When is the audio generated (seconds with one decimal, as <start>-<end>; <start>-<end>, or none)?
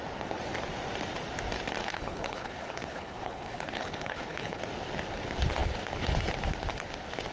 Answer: 1.8-4.6